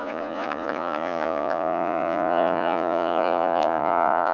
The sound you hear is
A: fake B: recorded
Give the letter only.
A